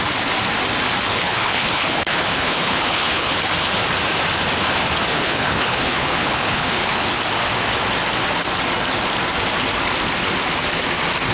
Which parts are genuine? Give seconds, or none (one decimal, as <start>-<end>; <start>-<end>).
0.0-1.1; 3.4-5.1; 7.2-11.3